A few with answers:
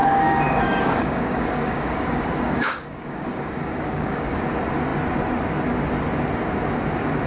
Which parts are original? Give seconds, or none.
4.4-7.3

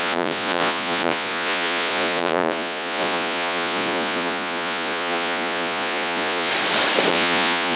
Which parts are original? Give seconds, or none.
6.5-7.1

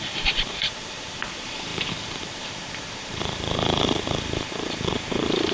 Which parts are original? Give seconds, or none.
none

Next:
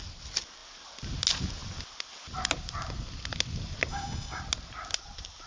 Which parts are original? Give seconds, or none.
0.0-3.9; 4.4-5.5